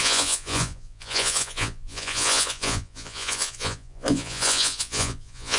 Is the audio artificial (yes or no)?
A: yes